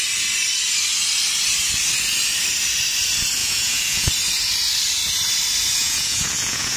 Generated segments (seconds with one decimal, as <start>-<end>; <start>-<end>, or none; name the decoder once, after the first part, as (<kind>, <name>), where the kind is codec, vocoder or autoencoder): 3.4-4.1 (vocoder, Vocos); 5.8-6.8

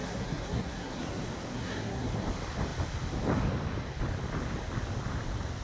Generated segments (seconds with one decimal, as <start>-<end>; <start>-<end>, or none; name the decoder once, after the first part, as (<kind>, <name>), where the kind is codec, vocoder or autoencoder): 0.0-1.1 (codec, SNAC); 1.5-2.1

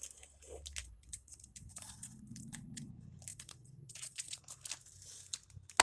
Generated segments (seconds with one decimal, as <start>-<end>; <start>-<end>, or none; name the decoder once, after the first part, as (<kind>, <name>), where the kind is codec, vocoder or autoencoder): 0.8-2.9 (vocoder, Vocos); 3.3-4.4

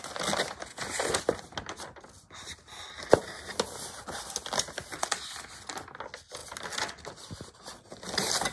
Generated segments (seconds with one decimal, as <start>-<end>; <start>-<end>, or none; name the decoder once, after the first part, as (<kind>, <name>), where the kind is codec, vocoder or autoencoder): none

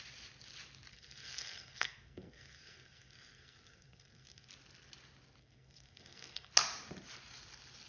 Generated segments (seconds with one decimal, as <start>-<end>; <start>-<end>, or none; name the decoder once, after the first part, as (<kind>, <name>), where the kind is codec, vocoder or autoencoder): 0.9-4.5 (codec, SNAC); 5.4-6.5

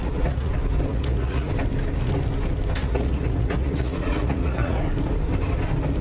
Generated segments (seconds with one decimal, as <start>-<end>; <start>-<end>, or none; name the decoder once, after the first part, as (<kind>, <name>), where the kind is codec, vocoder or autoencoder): 0.0-0.5 (vocoder, Vocos); 0.9-1.5; 2.8-4.8